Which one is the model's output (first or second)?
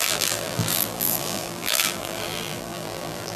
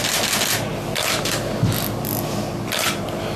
first